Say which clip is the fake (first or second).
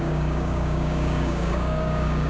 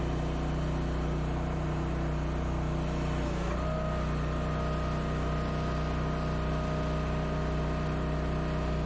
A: first